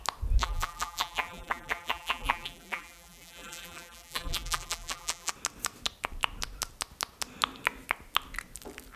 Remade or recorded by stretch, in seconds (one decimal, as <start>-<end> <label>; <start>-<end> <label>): 0.0-0.4 recorded; 0.4-5.3 remade; 5.3-9.0 recorded